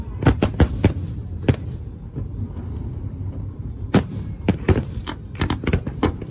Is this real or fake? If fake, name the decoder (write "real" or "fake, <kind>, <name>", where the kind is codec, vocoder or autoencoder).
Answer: fake, vocoder, BigVGAN v2